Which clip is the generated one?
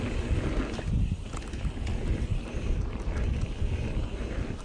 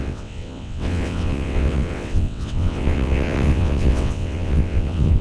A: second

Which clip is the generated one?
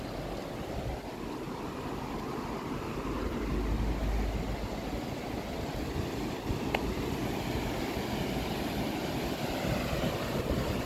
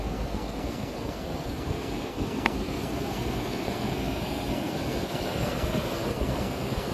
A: second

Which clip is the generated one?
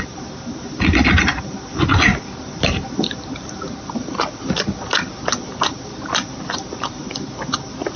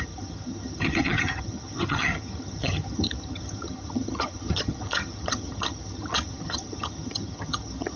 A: second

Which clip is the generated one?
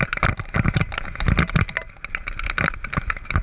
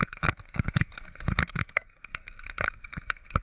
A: second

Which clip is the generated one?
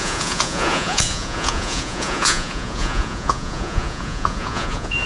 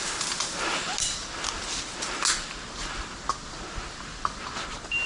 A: first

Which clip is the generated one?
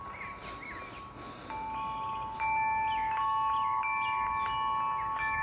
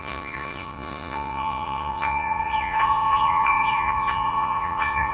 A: second